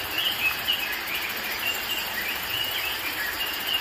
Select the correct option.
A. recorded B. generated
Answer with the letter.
A